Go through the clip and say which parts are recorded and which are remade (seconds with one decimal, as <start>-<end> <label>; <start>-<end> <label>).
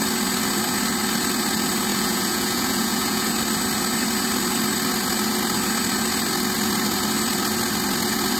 0.0-1.9 recorded; 1.9-3.3 remade; 3.3-8.4 recorded